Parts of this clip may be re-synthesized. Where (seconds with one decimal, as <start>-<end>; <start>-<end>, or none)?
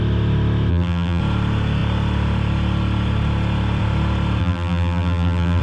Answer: 0.7-1.2; 4.4-5.6